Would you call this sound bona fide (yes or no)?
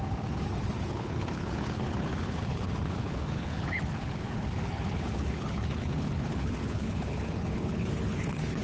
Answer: no